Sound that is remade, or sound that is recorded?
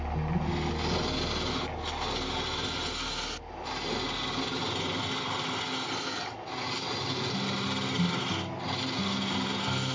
recorded